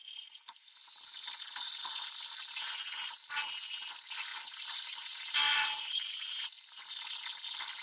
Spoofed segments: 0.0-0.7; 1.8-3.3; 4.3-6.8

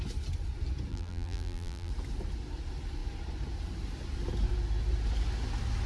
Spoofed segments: 0.9-1.9

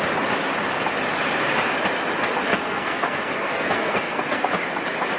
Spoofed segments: 2.5-4.5

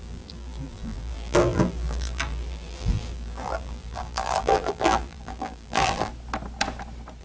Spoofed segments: 0.0-6.1

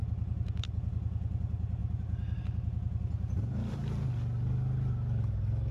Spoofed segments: none

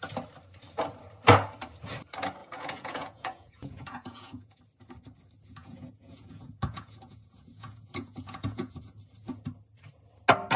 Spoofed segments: 2.4-4.6; 5.6-9.0

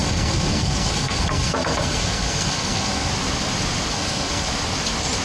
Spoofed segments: 0.0-3.1; 3.9-4.5

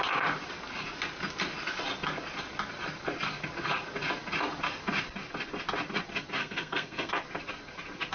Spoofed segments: 6.4-7.1